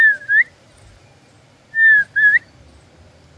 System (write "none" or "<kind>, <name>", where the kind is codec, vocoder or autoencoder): none